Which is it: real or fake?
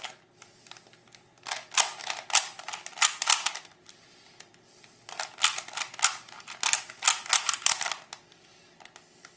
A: real